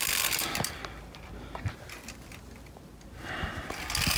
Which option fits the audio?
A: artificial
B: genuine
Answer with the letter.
A